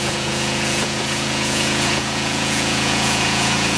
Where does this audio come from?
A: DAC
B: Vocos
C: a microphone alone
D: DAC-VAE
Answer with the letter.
B